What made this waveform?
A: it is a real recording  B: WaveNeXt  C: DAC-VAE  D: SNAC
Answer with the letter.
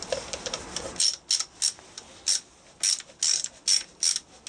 A